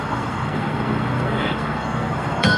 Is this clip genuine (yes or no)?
no